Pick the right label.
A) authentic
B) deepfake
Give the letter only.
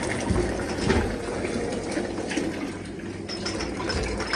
A